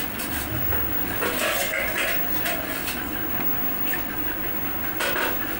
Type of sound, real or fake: real